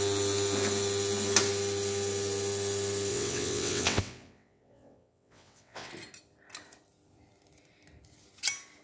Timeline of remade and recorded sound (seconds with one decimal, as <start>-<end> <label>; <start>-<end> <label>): 0.0-3.1 recorded; 3.1-5.9 remade; 5.9-8.8 recorded